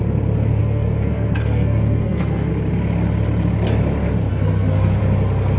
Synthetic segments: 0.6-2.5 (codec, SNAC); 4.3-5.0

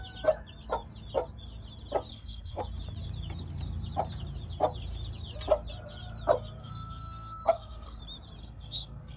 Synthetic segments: 2.1-2.6 (codec, SNAC); 6.6-8.0; 8.4-9.2

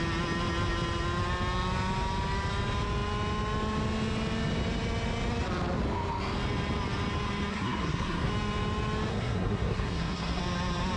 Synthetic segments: 7.5-8.3 (codec, SNAC); 9.1-10.4

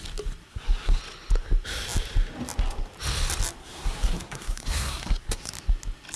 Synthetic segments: 0.5-1.0 (codec, SNAC); 3.6-5.5

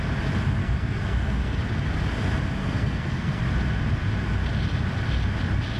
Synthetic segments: 0.6-1.6 (codec, SNAC); 2.6-3.4